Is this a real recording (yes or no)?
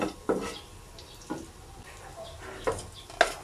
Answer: yes